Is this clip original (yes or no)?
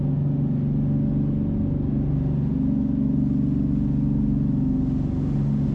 yes